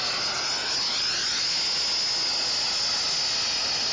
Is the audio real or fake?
real